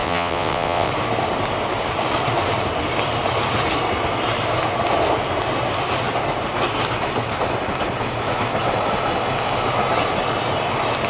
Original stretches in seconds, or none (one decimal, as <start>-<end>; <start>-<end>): 0.9-11.1